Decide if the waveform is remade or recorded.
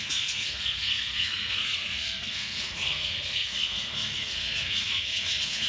remade